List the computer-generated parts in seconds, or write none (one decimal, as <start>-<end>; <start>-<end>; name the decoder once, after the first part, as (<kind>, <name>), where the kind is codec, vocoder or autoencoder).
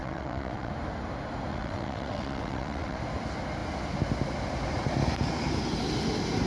0.0-0.7 (vocoder, WaveNeXt); 1.5-3.0